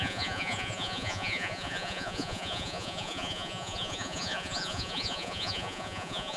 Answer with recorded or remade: remade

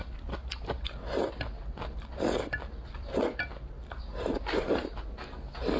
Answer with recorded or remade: recorded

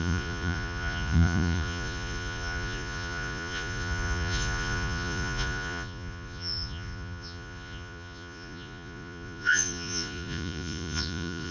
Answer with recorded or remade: remade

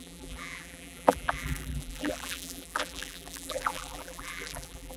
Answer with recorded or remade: remade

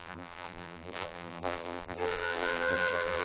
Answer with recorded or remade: remade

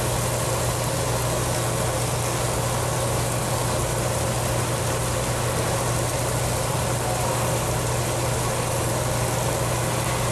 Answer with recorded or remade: recorded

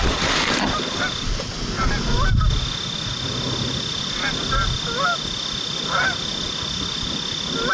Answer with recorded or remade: recorded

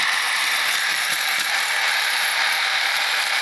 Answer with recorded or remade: remade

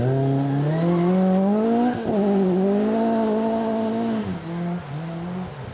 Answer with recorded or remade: recorded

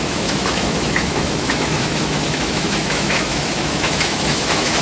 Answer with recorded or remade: remade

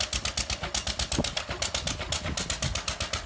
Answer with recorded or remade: recorded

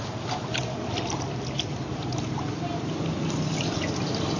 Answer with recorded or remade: remade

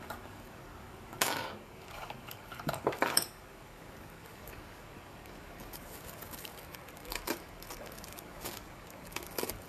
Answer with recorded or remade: remade